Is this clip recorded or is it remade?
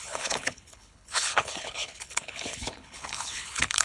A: remade